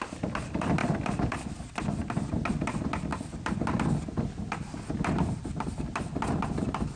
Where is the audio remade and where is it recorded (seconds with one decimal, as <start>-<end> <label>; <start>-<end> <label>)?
0.0-7.0 recorded